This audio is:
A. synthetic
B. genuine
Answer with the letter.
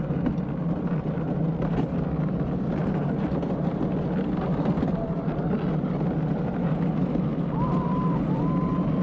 B